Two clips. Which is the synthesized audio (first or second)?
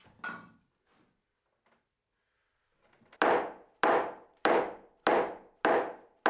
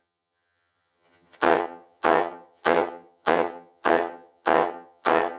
second